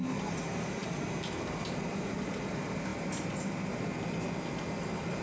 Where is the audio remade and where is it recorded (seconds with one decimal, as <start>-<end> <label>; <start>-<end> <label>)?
0.0-5.2 recorded